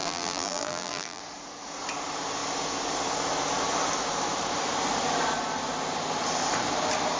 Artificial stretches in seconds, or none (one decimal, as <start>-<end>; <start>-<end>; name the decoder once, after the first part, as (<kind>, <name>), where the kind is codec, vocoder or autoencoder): 0.0-1.2 (vocoder, BigVGAN v2)